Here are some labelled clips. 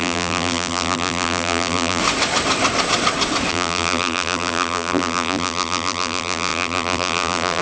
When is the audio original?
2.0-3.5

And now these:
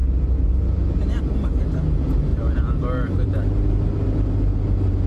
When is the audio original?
0.0-2.3; 3.7-5.1

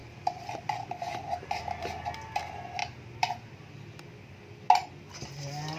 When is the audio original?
0.9-2.8; 4.0-4.8

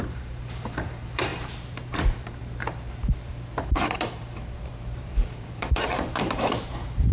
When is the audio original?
3.0-3.7

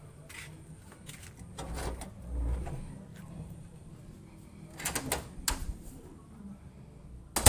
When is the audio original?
0.0-3.1; 3.9-5.6; 6.4-7.5

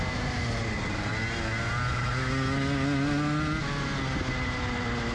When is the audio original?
0.0-5.1